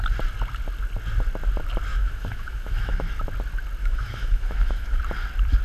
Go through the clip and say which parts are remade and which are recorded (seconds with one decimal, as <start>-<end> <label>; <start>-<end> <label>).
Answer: 0.0-1.9 recorded; 1.9-3.1 remade; 3.1-3.8 recorded; 3.8-5.0 remade; 5.0-5.6 recorded